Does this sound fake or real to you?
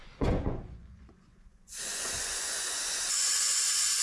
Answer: fake